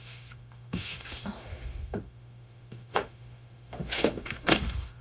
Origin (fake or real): fake